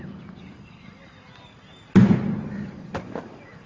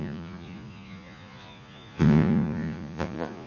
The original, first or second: first